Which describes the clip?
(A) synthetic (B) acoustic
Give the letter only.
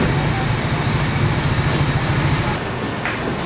B